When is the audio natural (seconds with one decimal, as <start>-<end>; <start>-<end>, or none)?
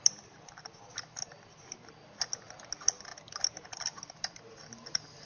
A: 0.0-5.3